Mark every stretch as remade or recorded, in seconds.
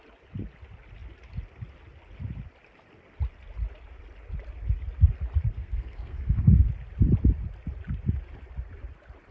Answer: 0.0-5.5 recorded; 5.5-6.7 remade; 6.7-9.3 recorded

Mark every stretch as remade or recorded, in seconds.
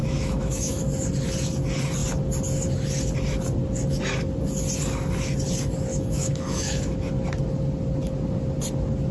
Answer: 0.0-0.8 remade; 0.8-5.9 recorded; 5.9-7.1 remade; 7.1-9.1 recorded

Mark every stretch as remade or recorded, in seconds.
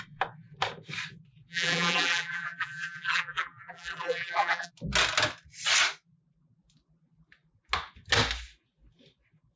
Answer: 0.0-1.5 recorded; 1.5-4.7 remade; 4.7-9.6 recorded